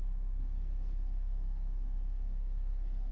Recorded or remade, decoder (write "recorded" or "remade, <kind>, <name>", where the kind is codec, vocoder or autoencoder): remade, codec, SNAC